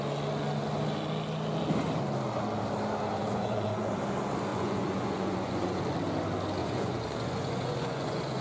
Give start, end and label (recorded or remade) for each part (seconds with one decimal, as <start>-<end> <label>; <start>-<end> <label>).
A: 0.0-3.2 recorded; 3.2-3.9 remade; 3.9-4.5 recorded; 4.5-5.8 remade; 5.8-6.6 recorded; 6.6-8.4 remade

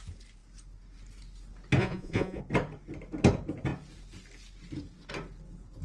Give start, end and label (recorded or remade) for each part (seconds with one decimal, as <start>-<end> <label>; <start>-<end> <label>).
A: 0.0-1.8 recorded; 1.8-2.4 remade; 2.4-5.8 recorded

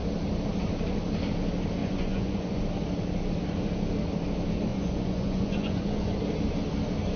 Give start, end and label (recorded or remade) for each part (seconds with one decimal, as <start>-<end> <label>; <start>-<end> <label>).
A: 0.0-1.8 recorded; 1.8-2.6 remade; 2.6-4.7 recorded; 4.7-6.2 remade; 6.2-7.2 recorded

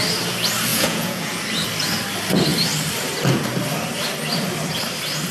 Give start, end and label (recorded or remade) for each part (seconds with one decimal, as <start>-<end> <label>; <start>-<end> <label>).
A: 0.0-0.7 recorded; 0.7-1.4 remade; 1.4-5.3 recorded

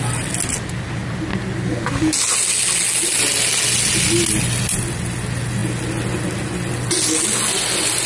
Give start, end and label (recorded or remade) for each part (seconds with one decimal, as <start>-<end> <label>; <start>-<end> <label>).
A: 0.0-8.1 recorded

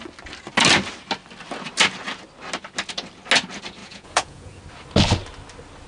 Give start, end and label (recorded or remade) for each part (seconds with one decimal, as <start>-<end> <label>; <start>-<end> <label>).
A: 0.0-3.8 recorded; 3.8-4.6 remade; 4.6-5.9 recorded

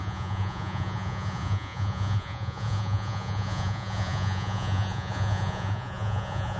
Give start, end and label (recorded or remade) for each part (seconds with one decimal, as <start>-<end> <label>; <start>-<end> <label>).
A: 0.0-6.6 remade

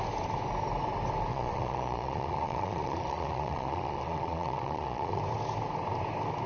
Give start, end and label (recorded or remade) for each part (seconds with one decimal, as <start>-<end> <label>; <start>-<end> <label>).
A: 0.0-1.3 recorded; 1.3-5.2 remade; 5.2-6.5 recorded